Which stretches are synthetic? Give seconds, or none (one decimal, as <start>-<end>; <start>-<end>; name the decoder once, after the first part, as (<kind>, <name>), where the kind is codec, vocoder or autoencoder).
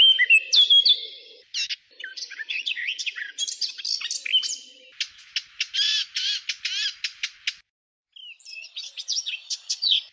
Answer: 2.1-3.3 (vocoder, Vocos); 8.5-10.1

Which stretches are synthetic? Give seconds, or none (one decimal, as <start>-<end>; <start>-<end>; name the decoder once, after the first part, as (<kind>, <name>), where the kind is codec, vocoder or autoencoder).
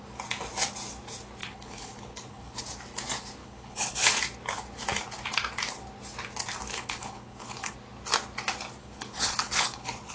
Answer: 1.4-2.6 (codec, HILCodec); 3.4-4.2; 6.7-7.7; 8.8-10.1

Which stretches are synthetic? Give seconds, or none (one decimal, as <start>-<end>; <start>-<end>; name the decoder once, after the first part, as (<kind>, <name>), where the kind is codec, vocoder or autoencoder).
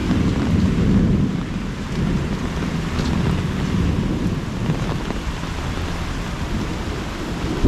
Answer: none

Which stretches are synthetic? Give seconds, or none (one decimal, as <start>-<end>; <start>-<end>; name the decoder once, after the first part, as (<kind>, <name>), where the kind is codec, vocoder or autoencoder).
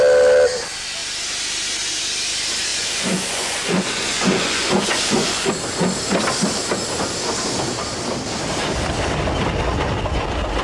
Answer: 2.7-5.5 (vocoder, Vocos)